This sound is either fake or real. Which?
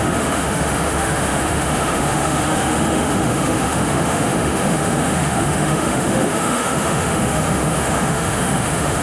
fake